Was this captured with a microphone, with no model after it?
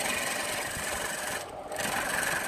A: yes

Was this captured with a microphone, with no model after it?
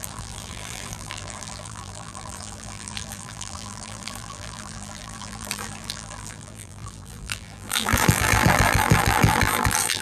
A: no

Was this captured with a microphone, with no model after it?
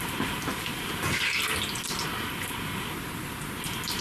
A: yes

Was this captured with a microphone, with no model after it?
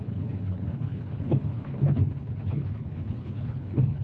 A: no